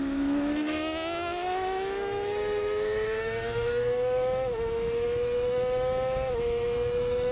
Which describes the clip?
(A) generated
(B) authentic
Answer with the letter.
A